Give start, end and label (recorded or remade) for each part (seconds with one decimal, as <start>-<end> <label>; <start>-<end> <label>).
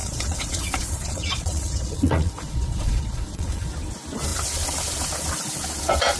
0.0-3.7 remade; 3.7-6.2 recorded